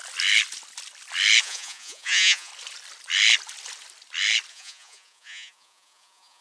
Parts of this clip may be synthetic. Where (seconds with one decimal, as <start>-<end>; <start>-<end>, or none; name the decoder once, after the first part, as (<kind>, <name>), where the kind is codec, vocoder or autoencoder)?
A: 1.4-2.5 (vocoder, Vocos); 4.5-6.4